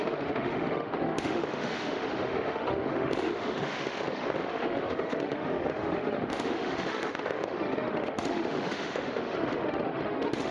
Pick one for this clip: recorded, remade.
remade